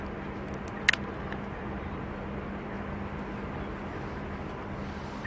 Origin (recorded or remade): recorded